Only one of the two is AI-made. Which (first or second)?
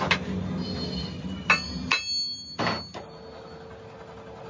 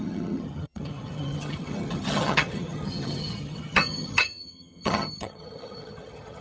second